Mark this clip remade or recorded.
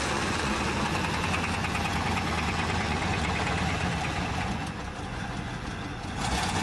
remade